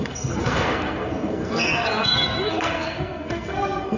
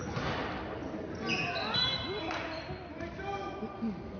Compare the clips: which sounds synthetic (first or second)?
first